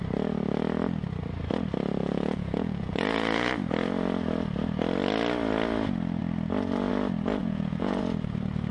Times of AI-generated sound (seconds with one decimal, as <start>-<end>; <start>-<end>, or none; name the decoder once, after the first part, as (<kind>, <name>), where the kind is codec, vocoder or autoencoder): 2.0-3.5 (vocoder, Vocos); 7.4-8.0